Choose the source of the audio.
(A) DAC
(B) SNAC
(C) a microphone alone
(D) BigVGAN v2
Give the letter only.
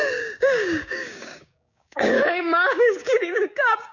A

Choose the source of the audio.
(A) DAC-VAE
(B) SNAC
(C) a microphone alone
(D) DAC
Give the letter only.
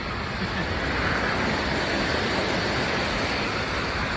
C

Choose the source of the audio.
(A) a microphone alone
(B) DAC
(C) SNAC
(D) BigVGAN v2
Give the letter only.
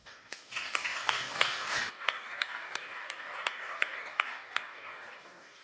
B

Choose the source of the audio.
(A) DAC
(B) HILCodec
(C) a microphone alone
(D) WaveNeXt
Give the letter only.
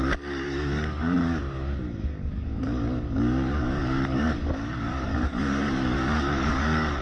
A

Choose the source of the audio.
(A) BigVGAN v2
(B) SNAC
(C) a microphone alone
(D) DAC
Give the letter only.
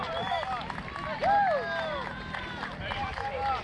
C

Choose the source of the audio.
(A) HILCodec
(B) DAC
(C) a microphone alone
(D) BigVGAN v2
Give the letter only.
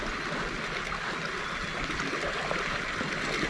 C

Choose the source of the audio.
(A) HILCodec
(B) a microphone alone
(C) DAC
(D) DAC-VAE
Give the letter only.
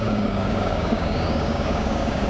C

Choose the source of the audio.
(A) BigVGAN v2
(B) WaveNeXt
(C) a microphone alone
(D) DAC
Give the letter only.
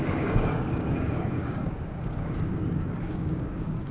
D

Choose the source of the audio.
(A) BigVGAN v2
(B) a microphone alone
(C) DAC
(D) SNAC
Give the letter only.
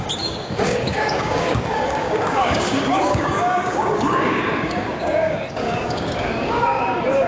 C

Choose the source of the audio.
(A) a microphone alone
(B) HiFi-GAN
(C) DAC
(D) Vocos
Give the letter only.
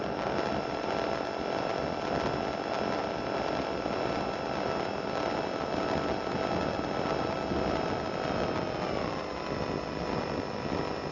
A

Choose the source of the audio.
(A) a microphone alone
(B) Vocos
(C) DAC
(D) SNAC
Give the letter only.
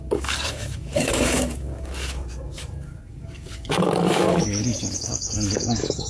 C